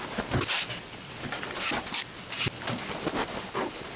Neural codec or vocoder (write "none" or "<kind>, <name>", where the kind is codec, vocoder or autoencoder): none